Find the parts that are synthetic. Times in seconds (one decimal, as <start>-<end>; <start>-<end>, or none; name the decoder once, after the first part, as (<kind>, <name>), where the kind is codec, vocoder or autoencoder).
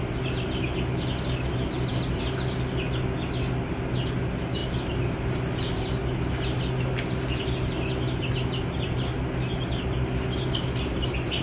none